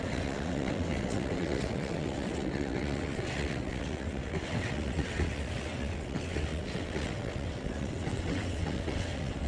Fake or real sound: fake